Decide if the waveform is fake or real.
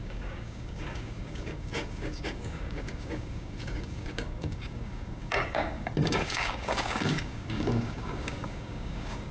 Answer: fake